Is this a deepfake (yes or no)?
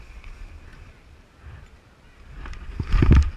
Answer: no